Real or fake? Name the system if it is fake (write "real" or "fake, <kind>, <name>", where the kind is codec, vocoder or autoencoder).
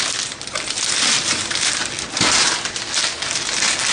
real